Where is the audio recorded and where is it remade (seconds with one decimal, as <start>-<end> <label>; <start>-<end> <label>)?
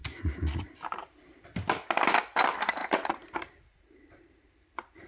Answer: 0.0-2.8 recorded; 2.8-4.5 remade; 4.5-5.1 recorded